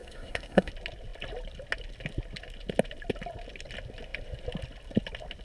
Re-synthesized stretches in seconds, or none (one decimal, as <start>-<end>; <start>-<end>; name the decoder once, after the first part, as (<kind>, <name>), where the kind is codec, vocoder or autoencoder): 0.0-0.7 (codec, SNAC)